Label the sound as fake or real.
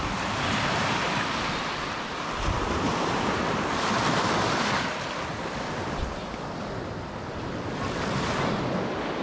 real